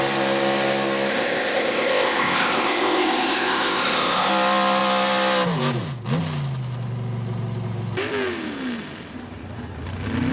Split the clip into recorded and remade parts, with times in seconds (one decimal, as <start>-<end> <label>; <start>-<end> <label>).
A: 0.0-1.1 recorded; 1.1-4.3 remade; 4.3-10.3 recorded